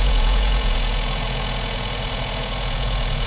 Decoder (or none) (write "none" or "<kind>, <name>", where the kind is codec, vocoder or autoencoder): vocoder, Vocos